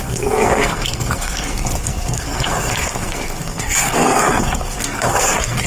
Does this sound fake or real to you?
fake